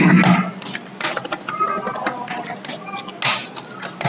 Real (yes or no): yes